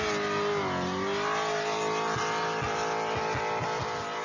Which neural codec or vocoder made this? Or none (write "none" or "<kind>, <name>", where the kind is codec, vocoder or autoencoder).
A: none